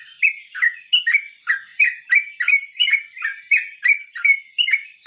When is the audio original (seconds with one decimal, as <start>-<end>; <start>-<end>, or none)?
0.0-1.7